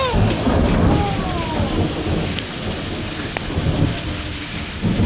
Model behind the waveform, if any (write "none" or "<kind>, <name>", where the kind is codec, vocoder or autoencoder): none